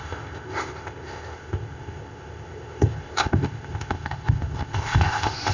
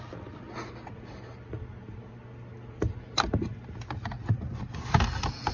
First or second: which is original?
second